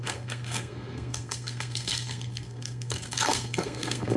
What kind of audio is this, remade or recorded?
remade